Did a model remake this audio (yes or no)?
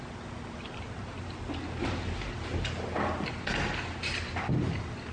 no